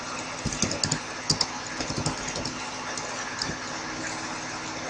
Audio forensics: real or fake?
real